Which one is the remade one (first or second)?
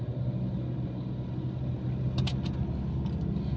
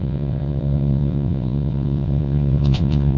second